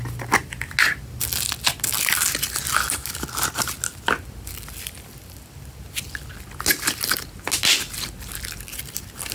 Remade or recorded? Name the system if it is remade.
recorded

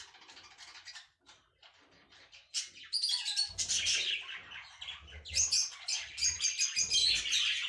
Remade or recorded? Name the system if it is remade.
recorded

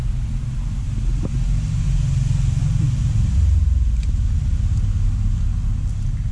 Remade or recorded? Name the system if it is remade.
recorded